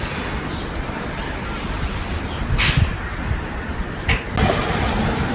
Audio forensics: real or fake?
real